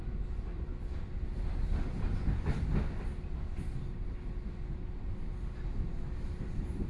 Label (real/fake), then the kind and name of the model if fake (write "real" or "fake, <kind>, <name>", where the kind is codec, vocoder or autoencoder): real